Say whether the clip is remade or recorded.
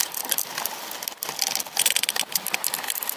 recorded